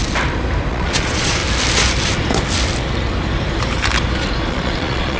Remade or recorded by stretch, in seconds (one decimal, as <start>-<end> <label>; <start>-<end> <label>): 0.0-0.7 recorded; 0.7-1.4 remade; 1.4-4.5 recorded; 4.5-5.2 remade